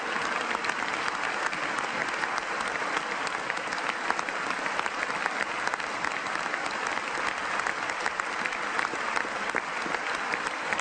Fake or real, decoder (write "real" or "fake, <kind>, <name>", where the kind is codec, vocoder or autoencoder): real